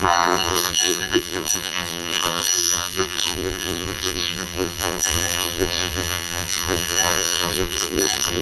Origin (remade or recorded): remade